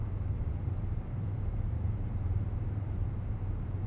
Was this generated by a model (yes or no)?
yes